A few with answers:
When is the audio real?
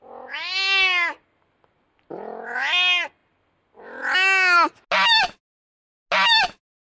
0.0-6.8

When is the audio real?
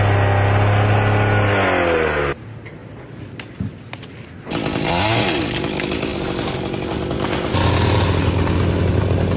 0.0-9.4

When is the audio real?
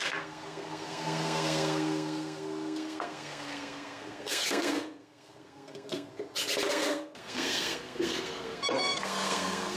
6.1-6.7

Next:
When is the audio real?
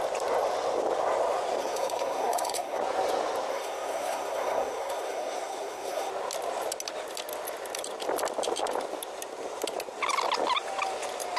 0.0-1.6; 2.8-3.5; 6.1-11.4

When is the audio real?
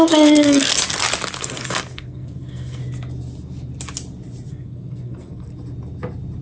0.7-1.4; 2.8-4.5; 5.5-6.4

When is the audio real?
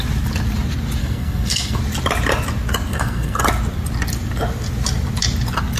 0.0-1.0; 1.8-2.9; 3.4-5.8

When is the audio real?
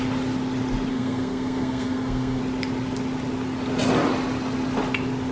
0.0-0.9; 2.4-5.3